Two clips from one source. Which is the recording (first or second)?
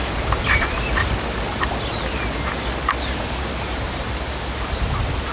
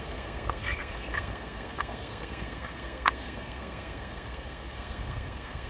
first